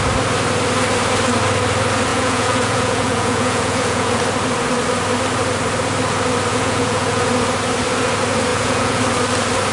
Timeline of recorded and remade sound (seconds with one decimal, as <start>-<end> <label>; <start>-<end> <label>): 0.0-2.1 recorded; 2.1-4.2 remade; 4.2-6.5 recorded; 6.5-7.3 remade; 7.3-8.5 recorded; 8.5-9.0 remade; 9.0-9.7 recorded